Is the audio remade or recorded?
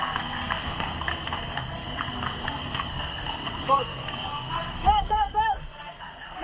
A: remade